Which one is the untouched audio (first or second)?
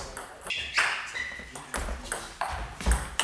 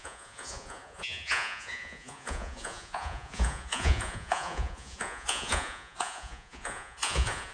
first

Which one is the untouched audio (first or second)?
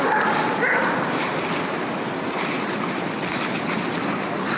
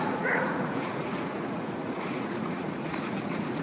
first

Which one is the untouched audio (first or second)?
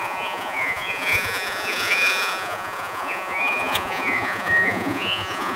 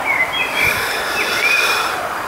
second